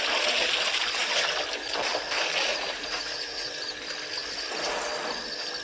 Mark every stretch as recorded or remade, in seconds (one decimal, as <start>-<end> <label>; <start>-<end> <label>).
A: 0.0-2.5 recorded; 2.5-3.5 remade; 3.5-5.6 recorded